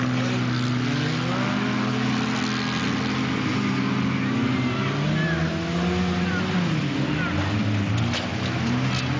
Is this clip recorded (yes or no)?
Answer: yes